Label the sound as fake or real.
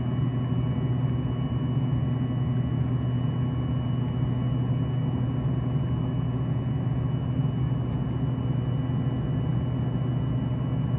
real